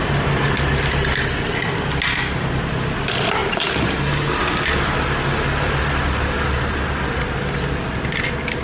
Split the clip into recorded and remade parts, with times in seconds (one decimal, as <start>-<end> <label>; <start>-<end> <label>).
0.0-8.6 recorded